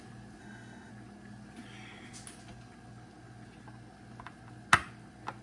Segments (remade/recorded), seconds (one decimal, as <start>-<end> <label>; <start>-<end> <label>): 0.0-0.4 recorded; 0.4-0.9 remade; 0.9-5.4 recorded

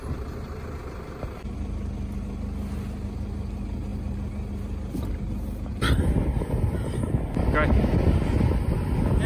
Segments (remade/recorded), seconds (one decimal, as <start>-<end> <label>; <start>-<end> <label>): 0.0-9.3 recorded

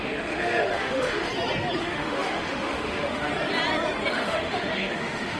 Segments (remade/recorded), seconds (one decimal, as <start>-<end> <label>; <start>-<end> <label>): 0.0-1.3 remade; 1.3-1.8 recorded; 1.8-3.3 remade; 3.3-4.1 recorded; 4.1-5.4 remade

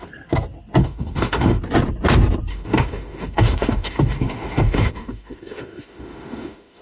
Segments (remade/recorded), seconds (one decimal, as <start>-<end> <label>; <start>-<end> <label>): 0.0-0.8 recorded; 0.8-1.6 remade; 1.6-2.5 recorded; 2.5-6.8 remade

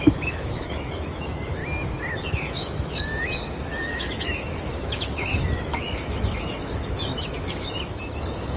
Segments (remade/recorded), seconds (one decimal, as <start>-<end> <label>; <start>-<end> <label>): 0.0-1.6 remade; 1.6-2.1 recorded; 2.1-8.6 remade

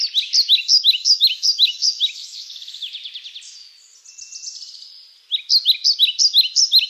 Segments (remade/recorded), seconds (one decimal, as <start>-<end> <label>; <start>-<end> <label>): 0.0-0.5 recorded; 0.5-2.9 remade; 2.9-6.9 recorded